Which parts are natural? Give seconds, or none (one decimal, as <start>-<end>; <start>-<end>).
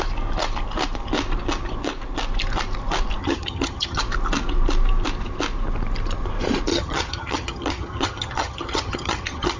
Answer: 0.0-3.2; 4.0-6.7